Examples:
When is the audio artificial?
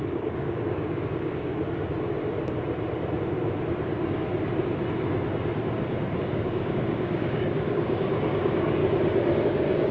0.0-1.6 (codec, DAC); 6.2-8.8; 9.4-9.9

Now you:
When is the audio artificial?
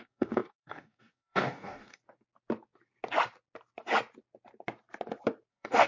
0.0-2.0 (codec, DAC); 5.5-5.9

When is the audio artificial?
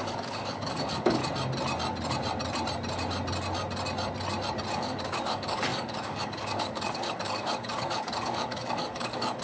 0.0-1.2 (codec, DAC); 4.7-9.4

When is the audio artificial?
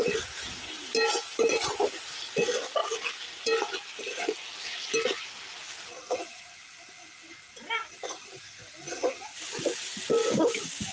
10.2-10.9 (codec, DAC)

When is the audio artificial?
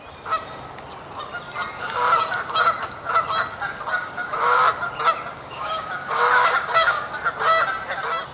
4.0-4.6 (codec, DAC); 5.3-7.1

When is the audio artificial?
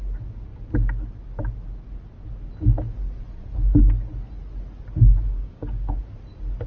5.3-6.0 (codec, DAC)